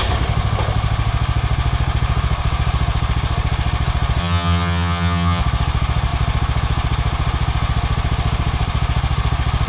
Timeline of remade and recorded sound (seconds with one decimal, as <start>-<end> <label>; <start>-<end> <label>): 0.0-4.2 recorded; 4.2-5.4 remade; 5.4-9.7 recorded